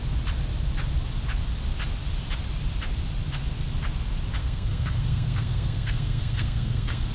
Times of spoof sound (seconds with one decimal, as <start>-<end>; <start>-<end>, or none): 4.4-7.1